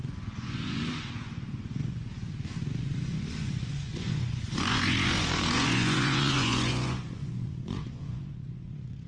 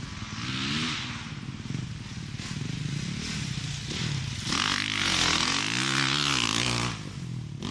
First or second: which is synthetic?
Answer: first